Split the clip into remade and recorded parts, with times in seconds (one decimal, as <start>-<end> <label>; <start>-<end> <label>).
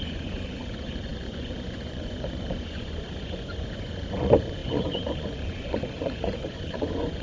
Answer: 0.0-7.2 remade